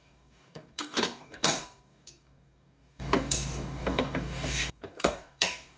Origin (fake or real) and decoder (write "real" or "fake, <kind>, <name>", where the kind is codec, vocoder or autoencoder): fake, codec, DAC